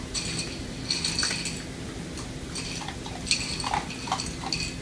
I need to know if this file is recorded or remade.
recorded